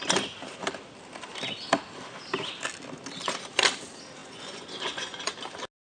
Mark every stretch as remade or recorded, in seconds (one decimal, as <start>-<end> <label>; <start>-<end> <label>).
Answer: 0.0-4.2 recorded; 4.2-5.3 remade; 5.3-5.8 recorded